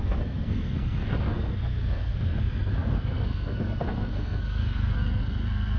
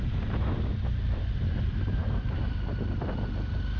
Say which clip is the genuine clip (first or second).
second